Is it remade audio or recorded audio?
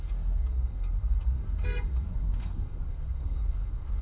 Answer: remade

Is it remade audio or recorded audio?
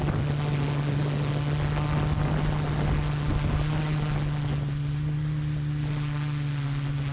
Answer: recorded